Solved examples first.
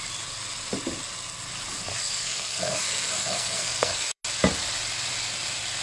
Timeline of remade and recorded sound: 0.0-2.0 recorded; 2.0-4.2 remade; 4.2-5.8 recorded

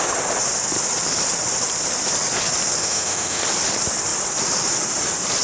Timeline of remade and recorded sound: 0.0-2.8 recorded; 2.8-3.4 remade; 3.4-5.4 recorded